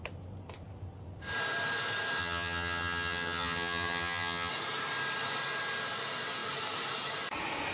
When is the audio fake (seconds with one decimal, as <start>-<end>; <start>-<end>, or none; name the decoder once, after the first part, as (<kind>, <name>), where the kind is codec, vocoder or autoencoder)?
2.2-4.5 (vocoder, HiFi-GAN)